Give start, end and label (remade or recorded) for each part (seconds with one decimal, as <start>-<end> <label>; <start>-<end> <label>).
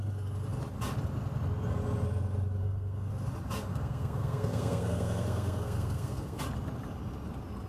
0.0-2.6 recorded; 2.6-3.1 remade; 3.1-3.7 recorded; 3.7-6.4 remade; 6.4-7.7 recorded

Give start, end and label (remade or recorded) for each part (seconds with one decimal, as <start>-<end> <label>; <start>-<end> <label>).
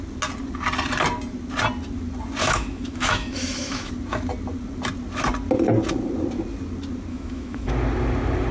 0.0-2.4 recorded; 2.4-3.9 remade; 3.9-7.1 recorded; 7.1-7.7 remade; 7.7-8.5 recorded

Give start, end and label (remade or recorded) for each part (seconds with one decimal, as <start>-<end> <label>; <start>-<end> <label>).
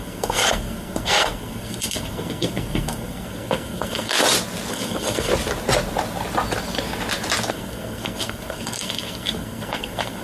0.0-4.1 remade; 4.1-4.7 recorded; 4.7-5.3 remade; 5.3-7.5 recorded; 7.5-10.2 remade